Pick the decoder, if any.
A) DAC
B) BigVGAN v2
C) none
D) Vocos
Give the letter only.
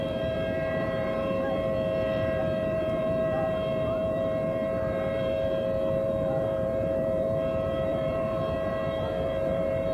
B